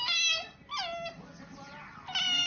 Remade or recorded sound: recorded